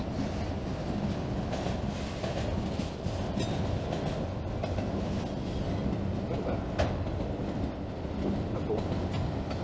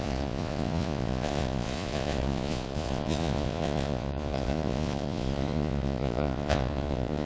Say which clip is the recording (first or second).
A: first